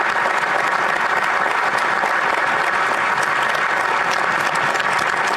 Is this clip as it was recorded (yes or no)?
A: yes